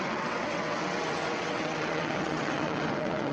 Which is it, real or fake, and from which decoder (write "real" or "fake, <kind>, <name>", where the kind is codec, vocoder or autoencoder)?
fake, vocoder, WaveNeXt